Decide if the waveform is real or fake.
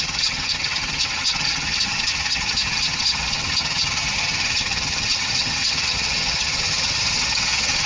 fake